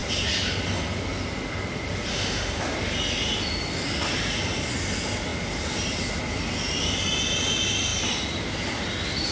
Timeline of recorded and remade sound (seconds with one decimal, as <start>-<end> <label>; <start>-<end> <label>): 0.0-2.1 recorded; 2.1-2.6 remade; 2.6-9.3 recorded